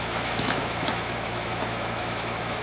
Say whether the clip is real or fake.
fake